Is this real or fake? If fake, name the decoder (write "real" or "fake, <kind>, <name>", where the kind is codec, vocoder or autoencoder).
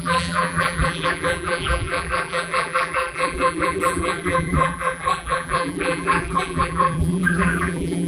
fake, vocoder, BigVGAN v2